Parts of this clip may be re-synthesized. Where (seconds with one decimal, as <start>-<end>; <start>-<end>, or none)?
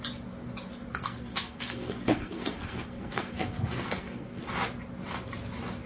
0.9-4.4